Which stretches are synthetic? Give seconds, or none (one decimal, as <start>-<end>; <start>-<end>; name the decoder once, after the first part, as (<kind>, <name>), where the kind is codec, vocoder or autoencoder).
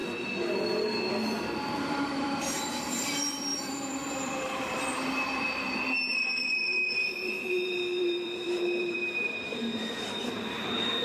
1.9-11.0 (vocoder, BigVGAN v2)